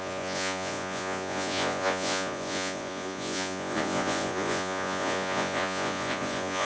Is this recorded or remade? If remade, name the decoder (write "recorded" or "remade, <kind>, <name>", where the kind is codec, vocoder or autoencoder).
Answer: remade, vocoder, Vocos